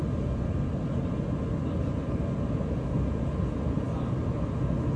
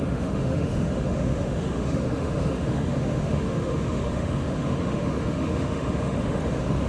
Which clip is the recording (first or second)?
first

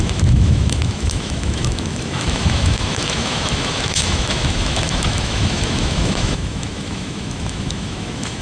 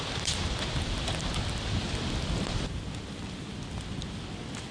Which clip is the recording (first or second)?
second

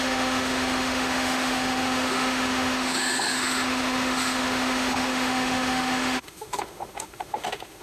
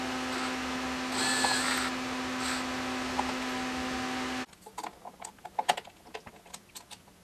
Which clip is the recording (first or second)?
second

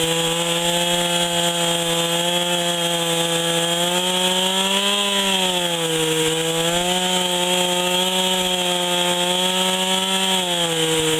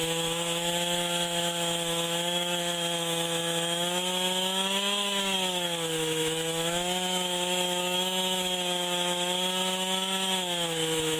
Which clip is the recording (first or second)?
first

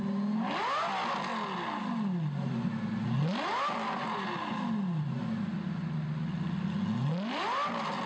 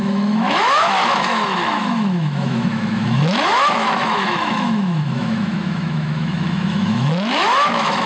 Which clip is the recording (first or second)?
first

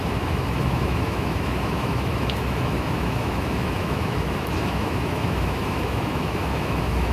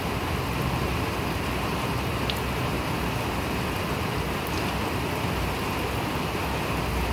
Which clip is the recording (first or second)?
second